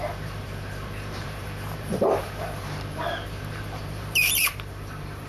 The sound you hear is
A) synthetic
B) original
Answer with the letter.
A